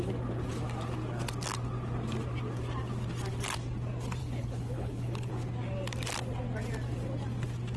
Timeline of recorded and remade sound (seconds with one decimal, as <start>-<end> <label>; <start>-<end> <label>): 0.0-4.2 recorded; 4.2-5.3 remade; 5.3-7.8 recorded